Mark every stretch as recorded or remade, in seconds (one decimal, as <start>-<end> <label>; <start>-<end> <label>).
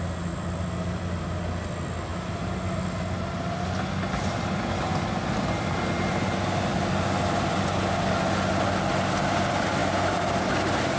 0.0-11.0 recorded